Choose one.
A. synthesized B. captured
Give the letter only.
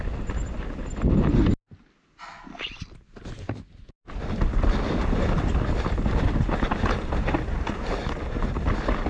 B